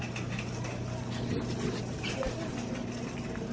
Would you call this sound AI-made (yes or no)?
no